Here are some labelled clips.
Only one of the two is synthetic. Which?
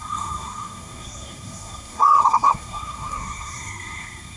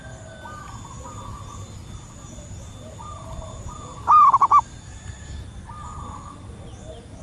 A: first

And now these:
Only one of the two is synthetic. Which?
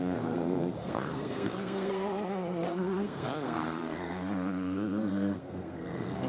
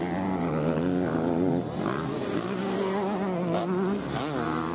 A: first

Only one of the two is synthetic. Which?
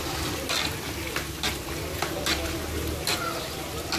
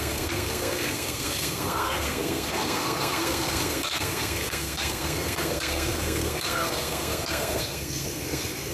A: second